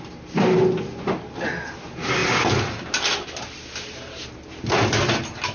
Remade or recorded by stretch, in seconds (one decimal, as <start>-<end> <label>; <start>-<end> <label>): 0.0-5.5 recorded